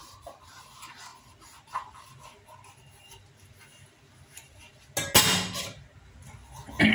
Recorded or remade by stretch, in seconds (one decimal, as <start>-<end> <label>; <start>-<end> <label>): 0.0-6.9 recorded